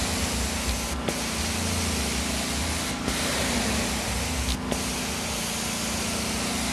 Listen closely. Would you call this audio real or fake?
real